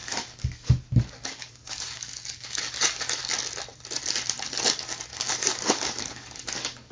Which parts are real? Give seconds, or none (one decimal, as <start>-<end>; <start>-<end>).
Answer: 3.2-5.1